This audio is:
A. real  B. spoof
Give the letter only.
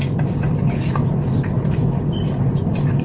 A